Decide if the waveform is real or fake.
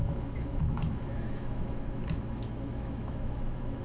fake